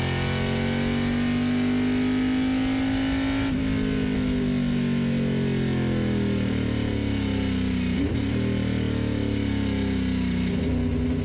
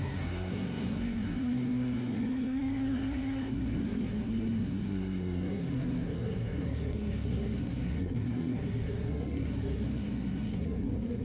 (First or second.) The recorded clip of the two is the first